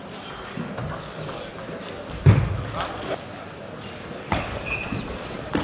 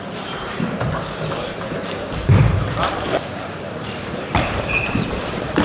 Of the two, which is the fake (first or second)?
second